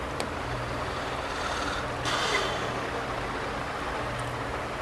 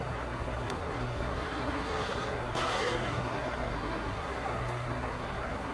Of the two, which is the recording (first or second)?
first